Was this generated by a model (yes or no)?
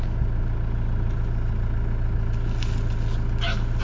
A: no